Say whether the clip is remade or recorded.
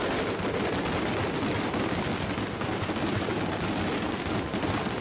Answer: recorded